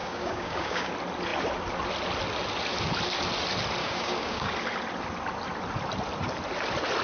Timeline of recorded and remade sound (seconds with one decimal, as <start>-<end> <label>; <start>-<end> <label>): 0.0-0.9 remade; 0.9-3.8 recorded; 3.8-4.5 remade; 4.5-7.0 recorded